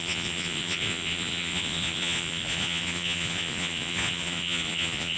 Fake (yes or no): yes